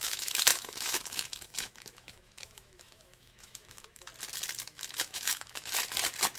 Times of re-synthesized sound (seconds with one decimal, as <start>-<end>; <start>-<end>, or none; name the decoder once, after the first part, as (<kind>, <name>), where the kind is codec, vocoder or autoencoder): 0.0-4.1 (autoencoder, DAC-VAE); 4.6-5.8